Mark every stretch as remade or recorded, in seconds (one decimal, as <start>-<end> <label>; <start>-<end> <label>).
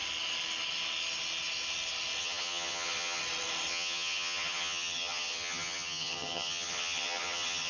0.0-2.2 recorded; 2.2-3.2 remade; 3.2-3.7 recorded; 3.7-7.7 remade